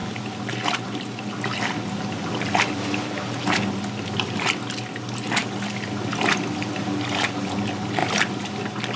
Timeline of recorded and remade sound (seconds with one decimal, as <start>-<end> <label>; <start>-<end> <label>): 0.0-9.0 recorded

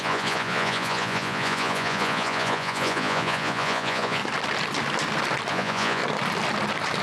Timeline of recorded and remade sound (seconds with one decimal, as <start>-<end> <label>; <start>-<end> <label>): 0.0-4.2 remade; 4.2-5.5 recorded; 5.5-6.0 remade; 6.0-7.0 recorded